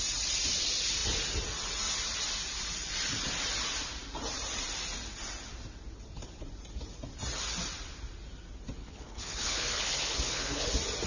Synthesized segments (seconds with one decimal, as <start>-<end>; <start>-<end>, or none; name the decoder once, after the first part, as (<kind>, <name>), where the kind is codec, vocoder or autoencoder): 8.8-10.7 (codec, HILCodec)